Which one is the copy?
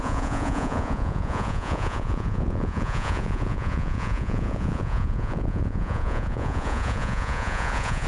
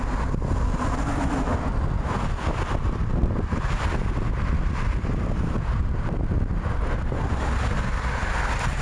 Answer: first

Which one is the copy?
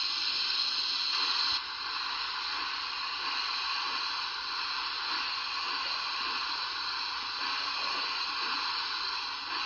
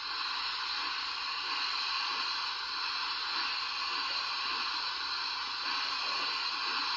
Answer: first